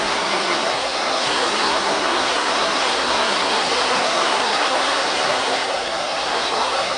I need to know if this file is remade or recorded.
remade